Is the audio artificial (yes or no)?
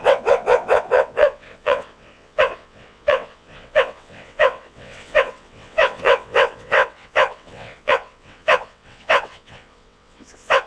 yes